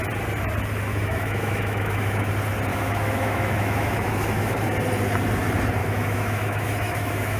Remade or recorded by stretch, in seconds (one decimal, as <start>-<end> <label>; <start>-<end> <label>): 0.0-0.9 recorded; 0.9-2.3 remade; 2.3-2.7 recorded; 2.7-4.6 remade; 4.6-5.8 recorded; 5.8-7.4 remade